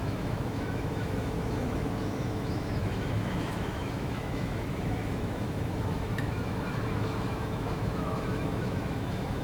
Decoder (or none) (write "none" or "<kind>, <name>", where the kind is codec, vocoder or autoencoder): autoencoder, DAC-VAE